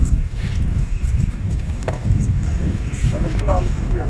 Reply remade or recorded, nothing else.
remade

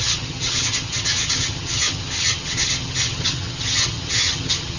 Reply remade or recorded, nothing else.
remade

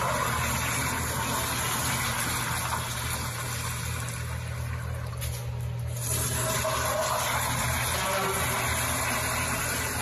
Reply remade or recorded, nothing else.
recorded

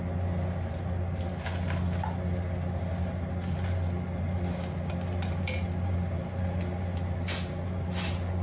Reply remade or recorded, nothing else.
recorded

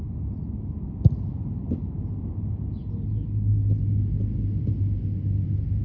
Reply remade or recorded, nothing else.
recorded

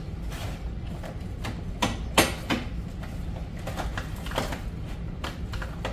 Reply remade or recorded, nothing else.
recorded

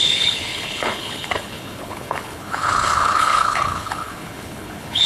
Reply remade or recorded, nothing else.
remade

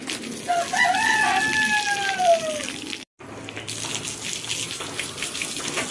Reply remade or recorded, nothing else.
recorded